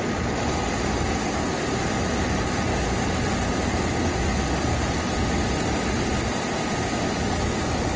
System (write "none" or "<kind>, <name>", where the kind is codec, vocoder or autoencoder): none